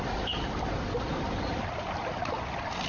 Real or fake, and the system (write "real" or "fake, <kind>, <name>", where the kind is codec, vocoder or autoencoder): fake, vocoder, BigVGAN v2